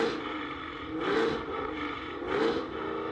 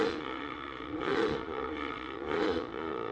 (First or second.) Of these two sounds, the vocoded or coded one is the second